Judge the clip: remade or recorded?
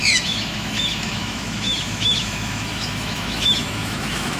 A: remade